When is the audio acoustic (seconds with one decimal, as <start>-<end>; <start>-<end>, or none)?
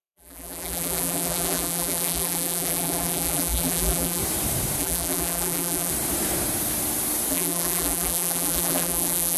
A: 4.2-4.8; 5.9-7.3